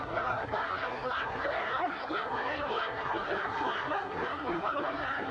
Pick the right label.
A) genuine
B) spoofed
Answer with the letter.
B